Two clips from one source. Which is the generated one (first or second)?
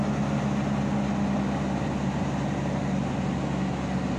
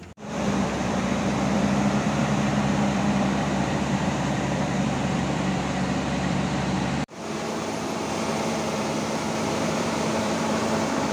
second